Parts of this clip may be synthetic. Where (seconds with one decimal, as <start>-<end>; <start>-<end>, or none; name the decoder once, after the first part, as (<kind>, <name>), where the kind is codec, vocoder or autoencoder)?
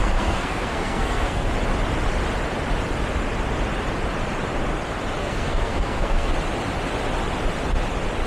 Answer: 0.0-1.5 (codec, SNAC); 5.2-6.3